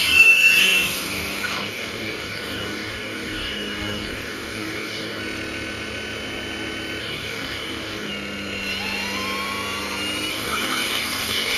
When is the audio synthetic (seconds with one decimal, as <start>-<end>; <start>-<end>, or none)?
0.0-5.2; 7.0-8.1; 10.3-11.6